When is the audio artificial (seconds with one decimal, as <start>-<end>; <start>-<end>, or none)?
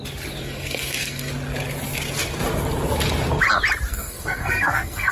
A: 0.4-1.3; 3.9-5.1